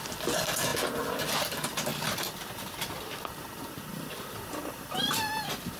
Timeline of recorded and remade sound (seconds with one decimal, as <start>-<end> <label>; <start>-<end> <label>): 0.0-3.9 recorded; 3.9-5.3 remade; 5.3-5.8 recorded